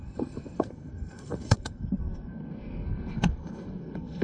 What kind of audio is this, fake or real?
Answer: fake